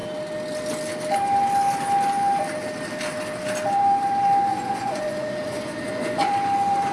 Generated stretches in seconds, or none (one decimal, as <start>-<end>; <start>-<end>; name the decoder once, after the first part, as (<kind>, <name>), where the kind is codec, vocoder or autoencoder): 4.5-6.3 (vocoder, Vocos)